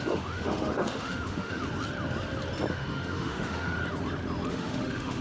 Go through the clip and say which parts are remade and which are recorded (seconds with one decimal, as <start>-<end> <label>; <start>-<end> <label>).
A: 0.0-1.6 remade; 1.6-2.7 recorded; 2.7-3.8 remade; 3.8-4.5 recorded; 4.5-5.2 remade